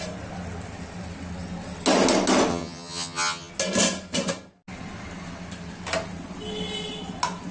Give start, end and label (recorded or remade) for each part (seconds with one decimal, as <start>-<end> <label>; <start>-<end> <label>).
0.0-2.5 recorded; 2.5-3.5 remade; 3.5-7.5 recorded